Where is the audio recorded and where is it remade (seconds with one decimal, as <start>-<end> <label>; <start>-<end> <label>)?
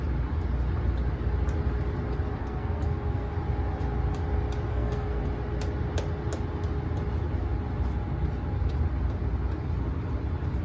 0.0-2.4 recorded; 2.4-3.3 remade; 3.3-4.7 recorded; 4.7-5.2 remade; 5.2-10.6 recorded